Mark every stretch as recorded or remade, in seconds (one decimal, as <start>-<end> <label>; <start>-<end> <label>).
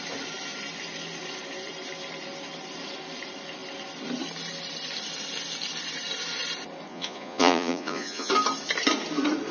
0.0-6.9 recorded; 6.9-8.3 remade; 8.3-9.5 recorded